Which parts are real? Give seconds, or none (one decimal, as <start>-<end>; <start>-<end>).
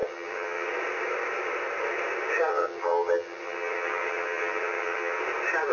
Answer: 0.7-2.5; 5.2-5.7